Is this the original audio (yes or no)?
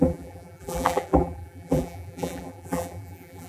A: no